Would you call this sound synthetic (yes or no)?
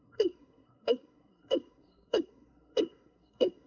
yes